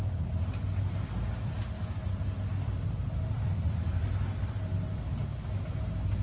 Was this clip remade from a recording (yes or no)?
no